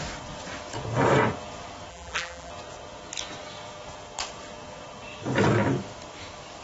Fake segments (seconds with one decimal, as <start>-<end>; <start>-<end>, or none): 1.9-2.5